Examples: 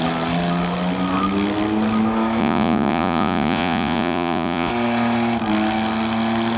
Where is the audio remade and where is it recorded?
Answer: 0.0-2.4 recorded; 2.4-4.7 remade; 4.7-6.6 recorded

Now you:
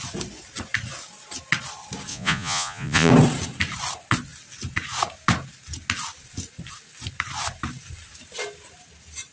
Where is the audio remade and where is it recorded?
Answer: 0.0-2.1 recorded; 2.1-3.1 remade; 3.1-9.3 recorded